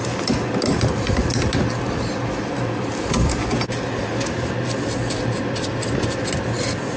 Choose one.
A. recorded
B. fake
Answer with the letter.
A